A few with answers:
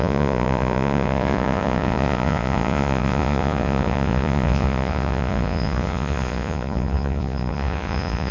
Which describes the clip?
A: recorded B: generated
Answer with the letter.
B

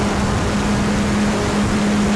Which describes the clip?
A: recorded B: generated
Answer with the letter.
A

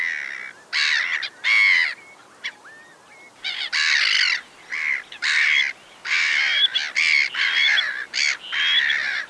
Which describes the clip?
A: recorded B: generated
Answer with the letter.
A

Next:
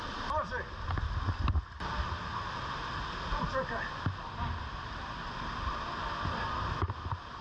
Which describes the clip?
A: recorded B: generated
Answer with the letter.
A